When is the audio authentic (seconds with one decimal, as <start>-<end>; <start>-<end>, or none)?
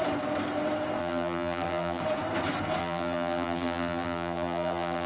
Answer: 0.0-1.0; 2.0-2.8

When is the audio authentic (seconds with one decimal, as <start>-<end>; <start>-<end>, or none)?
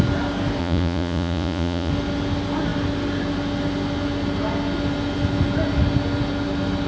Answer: 0.0-0.6; 1.9-6.9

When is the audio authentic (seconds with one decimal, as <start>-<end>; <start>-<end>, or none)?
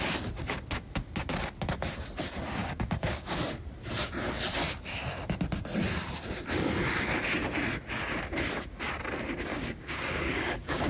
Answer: 0.0-2.6; 3.4-9.5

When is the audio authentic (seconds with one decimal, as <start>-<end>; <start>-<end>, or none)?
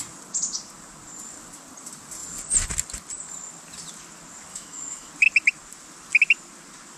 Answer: 0.0-4.5; 5.1-7.0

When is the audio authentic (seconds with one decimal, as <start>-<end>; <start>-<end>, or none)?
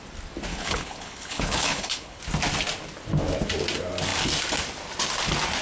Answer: 0.0-0.5; 2.2-5.6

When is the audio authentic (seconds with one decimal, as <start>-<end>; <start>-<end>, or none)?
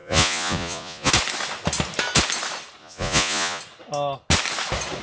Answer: 1.1-2.8; 3.6-5.0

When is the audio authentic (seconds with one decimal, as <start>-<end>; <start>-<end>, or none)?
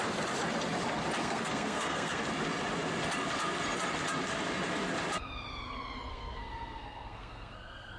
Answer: 0.0-1.2; 2.2-6.1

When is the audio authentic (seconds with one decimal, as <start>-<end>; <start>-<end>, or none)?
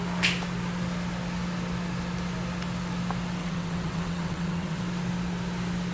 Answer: 0.0-3.4; 4.8-5.9